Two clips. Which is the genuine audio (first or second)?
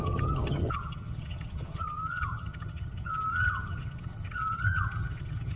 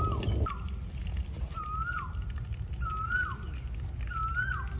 second